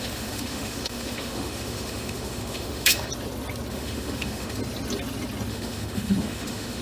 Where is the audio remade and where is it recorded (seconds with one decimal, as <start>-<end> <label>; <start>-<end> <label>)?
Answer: 0.0-3.1 remade; 3.1-3.7 recorded; 3.7-4.6 remade; 4.6-5.5 recorded; 5.5-6.8 remade